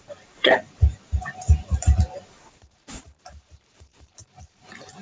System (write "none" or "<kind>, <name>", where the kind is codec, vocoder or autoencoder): vocoder, BigVGAN v2